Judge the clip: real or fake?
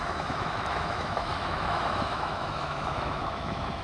fake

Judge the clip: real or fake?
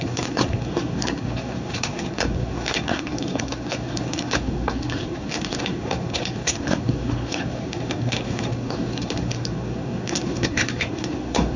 fake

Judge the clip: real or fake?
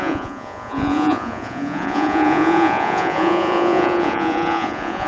fake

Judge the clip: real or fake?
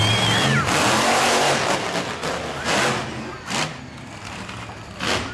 real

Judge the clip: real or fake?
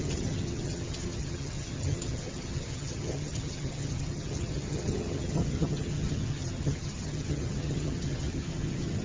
fake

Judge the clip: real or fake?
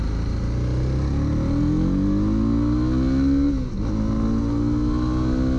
real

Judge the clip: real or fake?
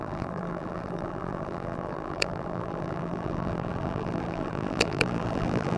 fake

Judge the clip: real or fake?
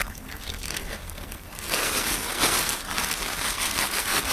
fake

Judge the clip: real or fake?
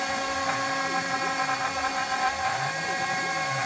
real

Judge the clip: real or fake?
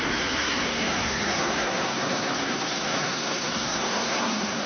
fake